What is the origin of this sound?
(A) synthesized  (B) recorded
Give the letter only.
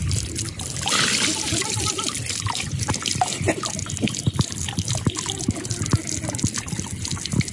B